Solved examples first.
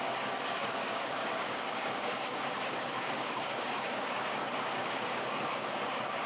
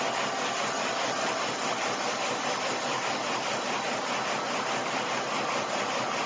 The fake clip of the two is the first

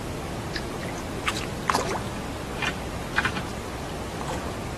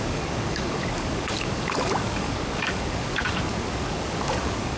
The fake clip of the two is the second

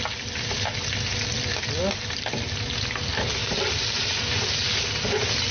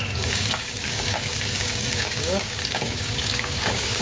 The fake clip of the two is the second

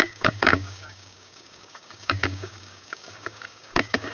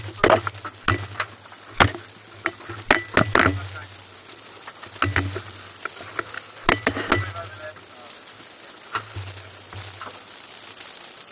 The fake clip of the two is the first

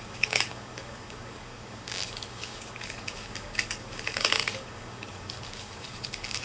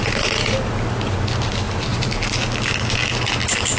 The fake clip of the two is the first